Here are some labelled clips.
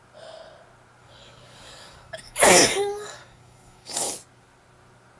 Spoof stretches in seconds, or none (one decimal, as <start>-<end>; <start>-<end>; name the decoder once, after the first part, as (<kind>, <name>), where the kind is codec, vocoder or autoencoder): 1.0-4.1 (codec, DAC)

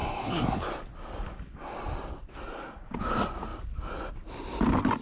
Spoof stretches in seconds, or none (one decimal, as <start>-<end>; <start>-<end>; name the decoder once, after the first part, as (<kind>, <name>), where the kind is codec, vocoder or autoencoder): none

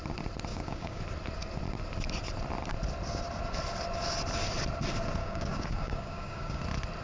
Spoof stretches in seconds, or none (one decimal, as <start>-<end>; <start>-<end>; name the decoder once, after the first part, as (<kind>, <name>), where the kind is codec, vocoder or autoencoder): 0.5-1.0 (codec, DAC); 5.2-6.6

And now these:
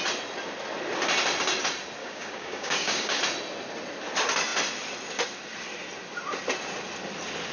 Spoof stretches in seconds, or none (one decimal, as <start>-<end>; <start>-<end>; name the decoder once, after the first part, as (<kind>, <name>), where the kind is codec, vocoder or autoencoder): 2.0-3.2 (codec, DAC)

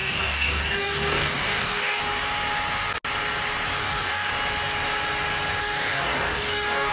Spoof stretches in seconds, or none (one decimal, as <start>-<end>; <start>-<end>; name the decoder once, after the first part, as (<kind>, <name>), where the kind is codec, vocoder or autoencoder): 0.0-2.0 (codec, DAC); 3.8-4.3; 5.6-6.9

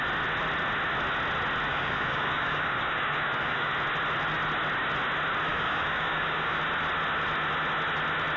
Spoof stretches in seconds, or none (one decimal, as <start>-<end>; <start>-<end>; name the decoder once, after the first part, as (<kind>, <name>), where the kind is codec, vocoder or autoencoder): 1.7-3.7 (codec, DAC); 5.5-6.6

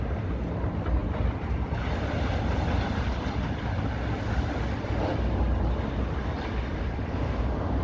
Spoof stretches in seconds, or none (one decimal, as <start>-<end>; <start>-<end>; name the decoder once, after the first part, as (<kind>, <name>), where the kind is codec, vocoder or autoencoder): none

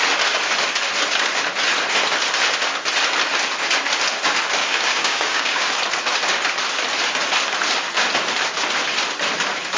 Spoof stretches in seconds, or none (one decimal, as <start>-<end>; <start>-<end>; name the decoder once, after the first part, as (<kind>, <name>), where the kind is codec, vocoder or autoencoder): 4.6-5.7 (codec, DAC)